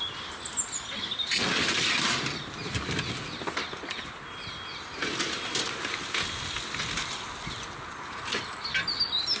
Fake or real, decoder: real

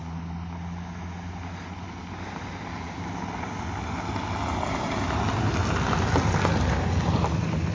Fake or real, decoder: real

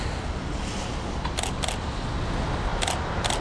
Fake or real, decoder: real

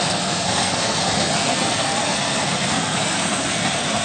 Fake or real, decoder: fake, codec, SNAC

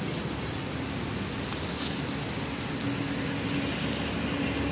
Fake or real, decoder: real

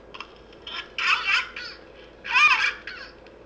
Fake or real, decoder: real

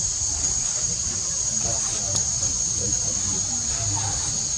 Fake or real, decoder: real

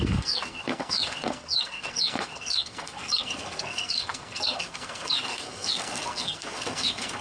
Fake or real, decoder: fake, codec, SNAC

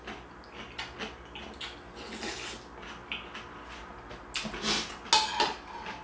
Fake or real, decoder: real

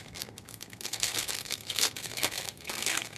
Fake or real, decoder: fake, codec, SNAC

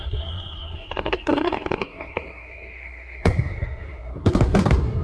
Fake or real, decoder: fake, codec, SNAC